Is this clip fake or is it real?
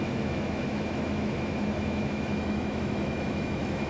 fake